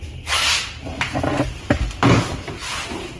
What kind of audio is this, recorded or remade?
recorded